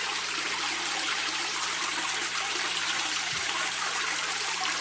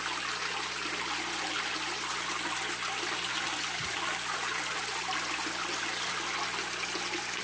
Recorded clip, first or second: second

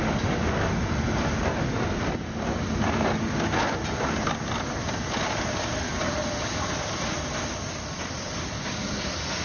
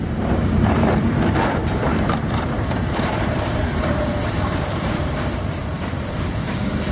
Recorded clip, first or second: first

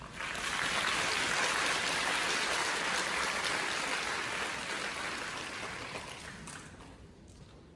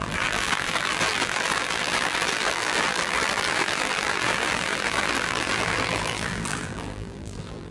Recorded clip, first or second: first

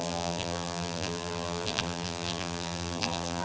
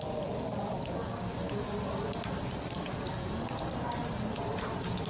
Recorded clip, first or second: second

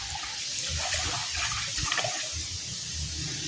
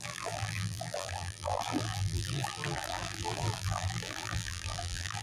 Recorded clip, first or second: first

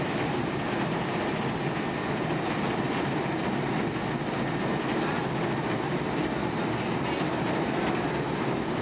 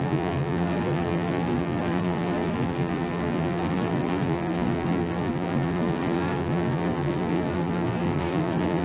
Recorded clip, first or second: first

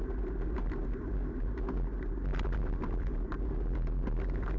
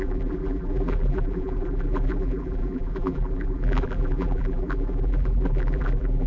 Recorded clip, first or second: first